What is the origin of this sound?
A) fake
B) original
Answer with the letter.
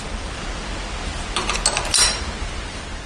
B